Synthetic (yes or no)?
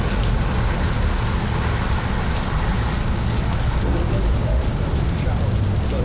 no